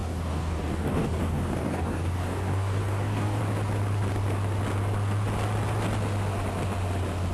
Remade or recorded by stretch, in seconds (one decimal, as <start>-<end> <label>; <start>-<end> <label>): 0.0-3.4 remade; 3.4-7.3 recorded